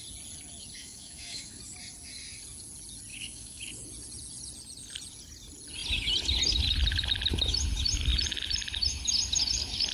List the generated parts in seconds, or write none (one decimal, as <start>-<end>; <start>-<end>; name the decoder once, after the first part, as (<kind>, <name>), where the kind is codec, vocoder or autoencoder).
0.8-1.6 (autoencoder, DAC-VAE); 3.1-3.7